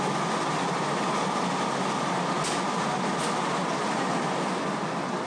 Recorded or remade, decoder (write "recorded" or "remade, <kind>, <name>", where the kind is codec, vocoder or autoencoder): recorded